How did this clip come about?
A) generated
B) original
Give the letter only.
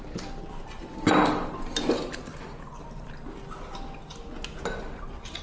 B